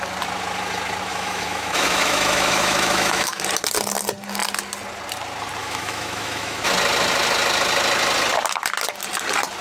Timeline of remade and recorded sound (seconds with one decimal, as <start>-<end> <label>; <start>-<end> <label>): 0.0-1.1 recorded; 1.1-3.4 remade; 3.4-5.6 recorded; 5.6-6.7 remade; 6.7-9.6 recorded